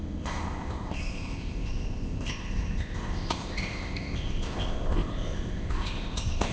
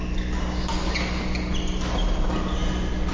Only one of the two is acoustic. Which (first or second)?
second